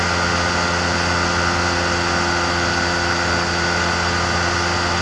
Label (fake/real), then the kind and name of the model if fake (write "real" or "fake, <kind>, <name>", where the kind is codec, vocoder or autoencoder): real